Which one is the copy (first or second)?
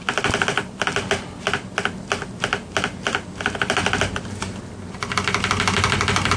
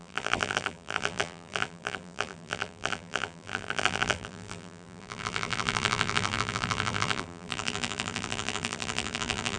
second